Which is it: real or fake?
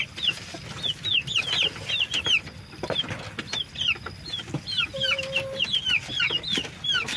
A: real